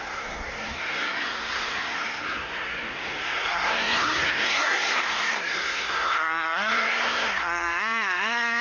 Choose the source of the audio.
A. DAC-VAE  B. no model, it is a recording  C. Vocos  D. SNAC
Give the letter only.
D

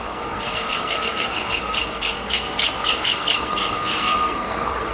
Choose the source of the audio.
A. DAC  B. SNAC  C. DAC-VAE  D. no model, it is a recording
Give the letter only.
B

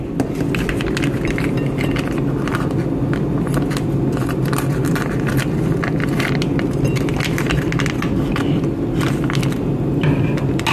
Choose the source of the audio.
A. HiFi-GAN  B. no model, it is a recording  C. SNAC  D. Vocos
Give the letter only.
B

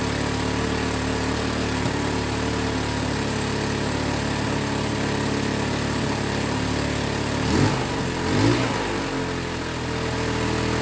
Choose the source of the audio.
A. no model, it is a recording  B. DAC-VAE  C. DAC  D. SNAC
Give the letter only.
A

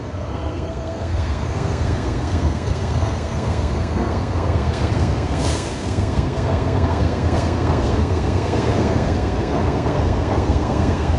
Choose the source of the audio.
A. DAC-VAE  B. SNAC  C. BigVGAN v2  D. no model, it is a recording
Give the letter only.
B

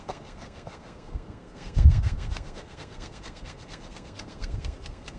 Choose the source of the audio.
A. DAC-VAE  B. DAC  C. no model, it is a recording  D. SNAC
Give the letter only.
D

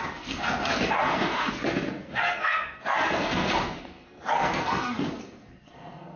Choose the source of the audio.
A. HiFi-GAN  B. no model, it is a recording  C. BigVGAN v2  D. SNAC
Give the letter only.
D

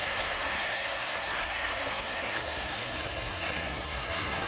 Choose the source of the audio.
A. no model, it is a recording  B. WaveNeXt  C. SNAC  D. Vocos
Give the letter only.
C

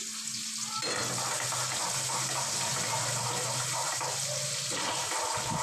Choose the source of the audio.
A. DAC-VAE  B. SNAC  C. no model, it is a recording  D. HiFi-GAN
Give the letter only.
C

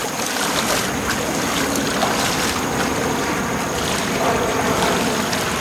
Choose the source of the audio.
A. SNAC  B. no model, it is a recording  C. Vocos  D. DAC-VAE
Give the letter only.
B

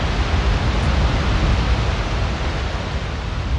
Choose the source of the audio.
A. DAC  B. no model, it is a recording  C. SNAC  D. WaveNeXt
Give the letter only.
B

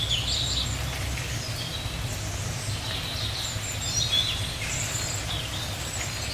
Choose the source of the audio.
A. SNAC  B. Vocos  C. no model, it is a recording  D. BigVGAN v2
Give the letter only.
C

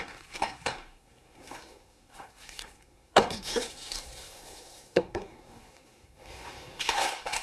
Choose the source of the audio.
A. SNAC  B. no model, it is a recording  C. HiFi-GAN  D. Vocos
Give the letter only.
A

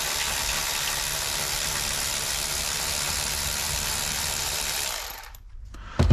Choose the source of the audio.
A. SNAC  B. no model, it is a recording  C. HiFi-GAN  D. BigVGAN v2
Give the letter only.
B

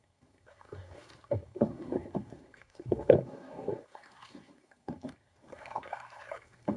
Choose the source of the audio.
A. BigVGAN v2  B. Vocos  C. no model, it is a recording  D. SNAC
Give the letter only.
D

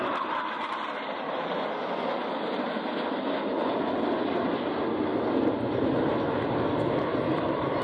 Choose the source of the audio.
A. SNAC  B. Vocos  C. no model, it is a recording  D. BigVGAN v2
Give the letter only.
C